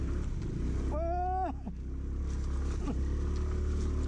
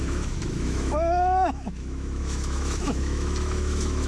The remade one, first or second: second